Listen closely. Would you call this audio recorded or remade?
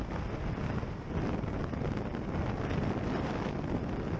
recorded